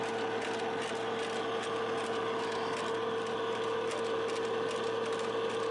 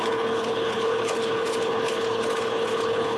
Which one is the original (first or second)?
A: first